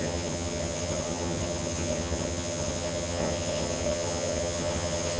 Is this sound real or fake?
fake